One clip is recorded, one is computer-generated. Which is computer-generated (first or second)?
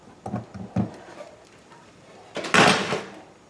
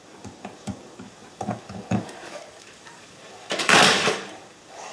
second